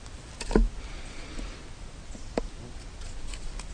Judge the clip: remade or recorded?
recorded